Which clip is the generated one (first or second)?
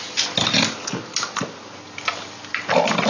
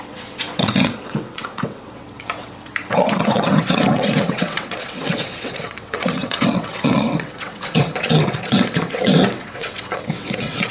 second